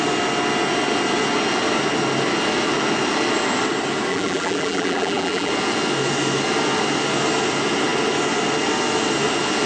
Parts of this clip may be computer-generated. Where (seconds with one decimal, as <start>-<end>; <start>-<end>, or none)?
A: 4.1-5.5